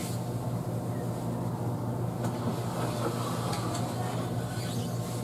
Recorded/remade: recorded